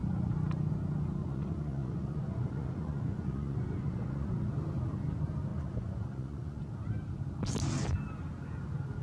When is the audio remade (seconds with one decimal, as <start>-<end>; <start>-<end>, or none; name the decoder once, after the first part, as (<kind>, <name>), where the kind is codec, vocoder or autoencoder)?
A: 1.2-4.3 (vocoder, Vocos); 5.5-6.7